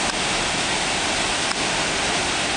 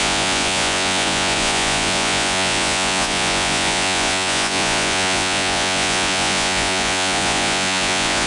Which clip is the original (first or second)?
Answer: first